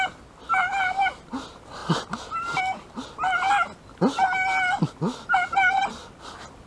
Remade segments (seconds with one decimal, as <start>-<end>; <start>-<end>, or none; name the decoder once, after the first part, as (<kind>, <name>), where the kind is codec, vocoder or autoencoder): none